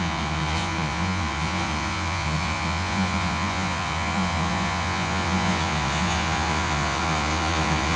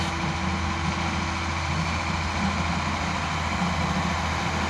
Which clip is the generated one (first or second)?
first